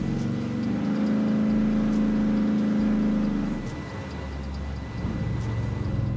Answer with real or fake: real